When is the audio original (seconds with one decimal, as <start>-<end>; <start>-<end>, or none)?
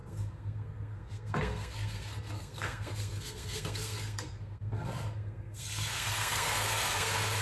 none